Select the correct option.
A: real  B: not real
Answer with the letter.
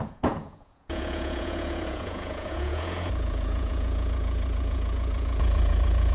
B